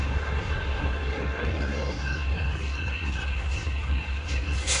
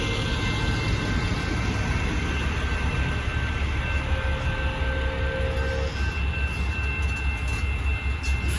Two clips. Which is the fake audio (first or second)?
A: first